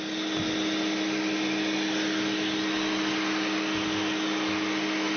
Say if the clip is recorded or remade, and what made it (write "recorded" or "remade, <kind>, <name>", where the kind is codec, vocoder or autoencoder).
recorded